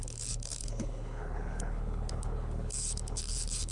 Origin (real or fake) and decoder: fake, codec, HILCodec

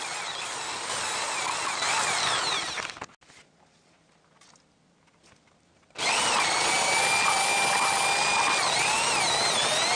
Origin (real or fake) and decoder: real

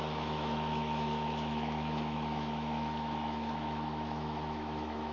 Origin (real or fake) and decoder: fake, autoencoder, DAC-VAE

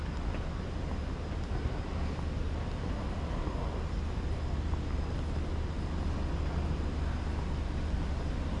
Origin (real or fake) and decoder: real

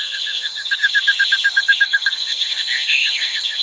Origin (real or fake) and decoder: fake, codec, SNAC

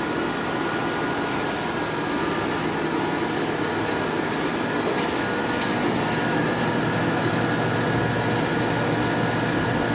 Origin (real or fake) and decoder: real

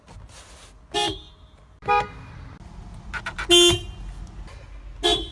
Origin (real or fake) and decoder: real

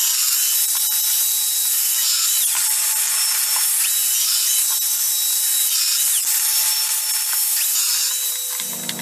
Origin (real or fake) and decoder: real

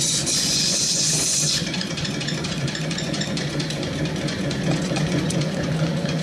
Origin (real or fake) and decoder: fake, vocoder, Vocos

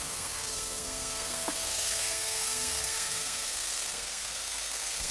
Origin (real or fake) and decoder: fake, codec, SNAC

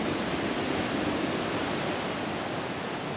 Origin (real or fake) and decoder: real